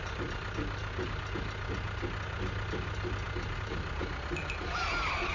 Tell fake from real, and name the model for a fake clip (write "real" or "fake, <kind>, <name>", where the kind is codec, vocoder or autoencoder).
real